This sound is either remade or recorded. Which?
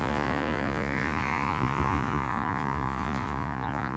remade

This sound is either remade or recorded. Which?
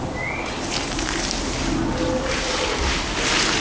recorded